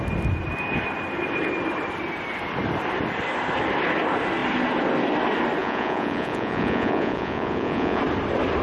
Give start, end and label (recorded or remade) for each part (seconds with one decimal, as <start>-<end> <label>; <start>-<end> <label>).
0.0-5.6 recorded; 5.6-8.0 remade; 8.0-8.6 recorded